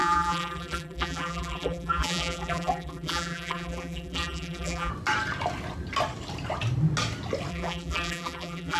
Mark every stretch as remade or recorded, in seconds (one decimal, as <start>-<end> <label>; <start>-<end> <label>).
0.0-4.9 remade; 4.9-7.5 recorded; 7.5-8.8 remade